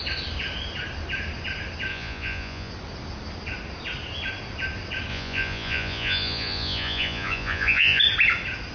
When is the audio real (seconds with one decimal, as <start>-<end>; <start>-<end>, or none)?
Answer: 0.0-1.9; 2.7-5.1; 8.0-8.7